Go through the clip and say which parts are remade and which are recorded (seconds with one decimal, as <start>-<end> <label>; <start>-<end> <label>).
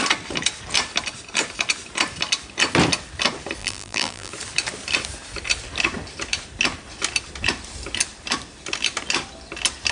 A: 0.0-3.6 recorded; 3.6-4.3 remade; 4.3-9.9 recorded